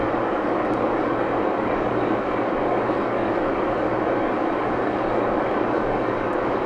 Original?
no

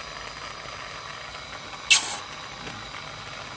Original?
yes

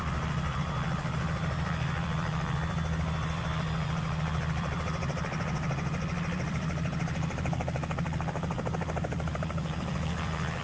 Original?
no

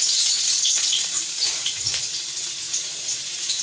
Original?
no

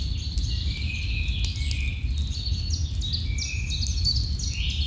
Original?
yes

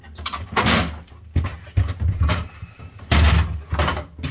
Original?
yes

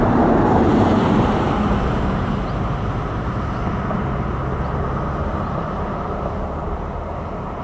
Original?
no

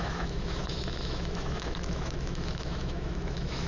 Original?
no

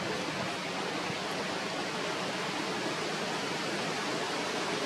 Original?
no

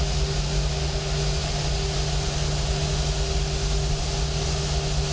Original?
yes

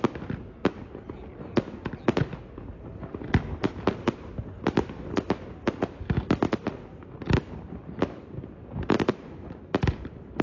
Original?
yes